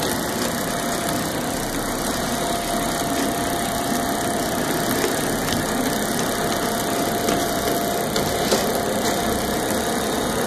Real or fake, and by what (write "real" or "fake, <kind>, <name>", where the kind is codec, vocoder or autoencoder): real